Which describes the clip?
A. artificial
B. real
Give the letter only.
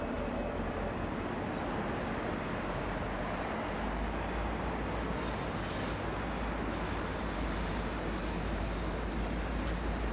B